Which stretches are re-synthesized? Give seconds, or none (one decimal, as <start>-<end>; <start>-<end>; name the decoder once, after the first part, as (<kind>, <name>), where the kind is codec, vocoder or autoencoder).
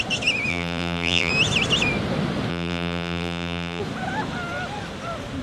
0.5-1.3 (vocoder, BigVGAN v2); 2.5-3.8